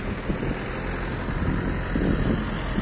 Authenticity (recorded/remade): recorded